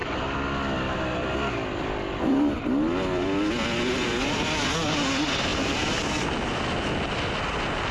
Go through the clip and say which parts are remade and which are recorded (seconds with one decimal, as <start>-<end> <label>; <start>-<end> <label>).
0.0-7.9 recorded